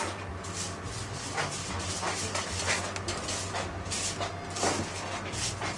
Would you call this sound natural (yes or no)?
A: yes